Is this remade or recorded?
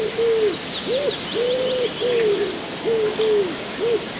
recorded